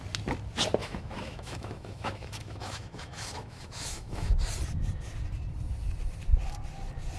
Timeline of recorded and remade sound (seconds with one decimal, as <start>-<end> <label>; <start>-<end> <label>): 0.0-0.8 recorded; 0.8-4.3 remade; 4.3-7.2 recorded